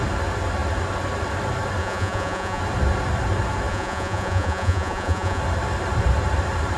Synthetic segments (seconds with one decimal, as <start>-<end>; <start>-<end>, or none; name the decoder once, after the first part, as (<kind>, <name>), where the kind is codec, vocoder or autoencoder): 1.8-2.6 (vocoder, Vocos); 3.7-5.4